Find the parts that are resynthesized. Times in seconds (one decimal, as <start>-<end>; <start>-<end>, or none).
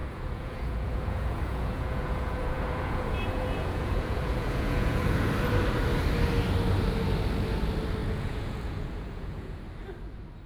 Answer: 0.0-5.3; 8.0-9.6